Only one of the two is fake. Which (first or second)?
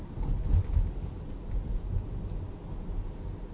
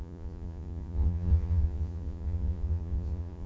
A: second